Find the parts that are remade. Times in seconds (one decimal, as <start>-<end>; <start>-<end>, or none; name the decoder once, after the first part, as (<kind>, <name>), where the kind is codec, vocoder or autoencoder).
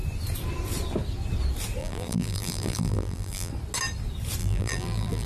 1.8-3.5 (vocoder, BigVGAN v2); 4.4-5.3